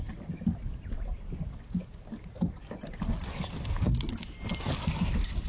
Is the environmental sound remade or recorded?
recorded